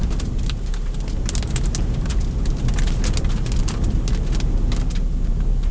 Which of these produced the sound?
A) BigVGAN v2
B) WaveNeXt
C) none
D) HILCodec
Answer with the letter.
C